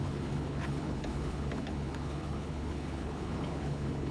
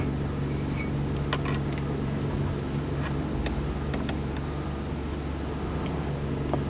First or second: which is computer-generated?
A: first